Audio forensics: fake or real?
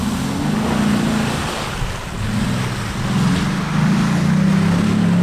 real